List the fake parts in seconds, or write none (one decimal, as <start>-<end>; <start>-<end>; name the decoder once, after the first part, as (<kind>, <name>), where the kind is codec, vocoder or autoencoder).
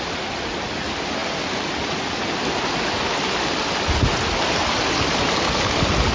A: none